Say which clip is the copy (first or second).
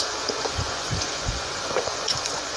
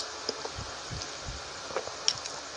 first